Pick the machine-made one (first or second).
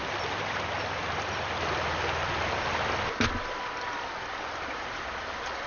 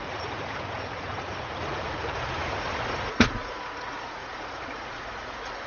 second